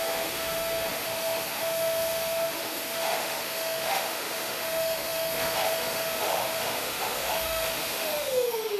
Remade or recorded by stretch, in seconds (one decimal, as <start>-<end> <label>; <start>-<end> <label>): 0.0-8.8 remade